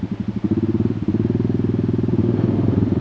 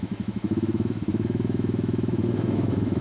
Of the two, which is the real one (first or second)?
first